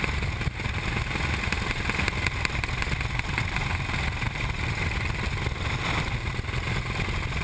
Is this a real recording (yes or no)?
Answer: yes